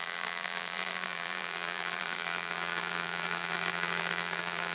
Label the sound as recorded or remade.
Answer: remade